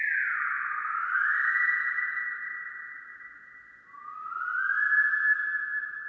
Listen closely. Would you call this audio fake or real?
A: real